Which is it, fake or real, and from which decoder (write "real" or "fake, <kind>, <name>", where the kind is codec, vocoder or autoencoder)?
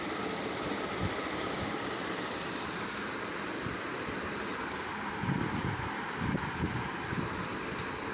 fake, vocoder, BigVGAN v2